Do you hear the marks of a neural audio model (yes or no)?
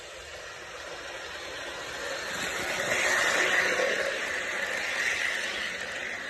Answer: no